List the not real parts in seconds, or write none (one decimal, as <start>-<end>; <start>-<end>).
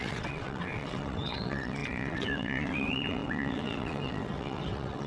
0.0-5.1